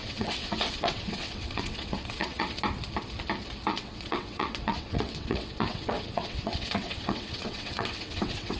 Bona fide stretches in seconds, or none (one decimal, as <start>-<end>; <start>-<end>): 2.6-3.7